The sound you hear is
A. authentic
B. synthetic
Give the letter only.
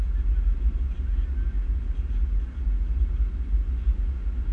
B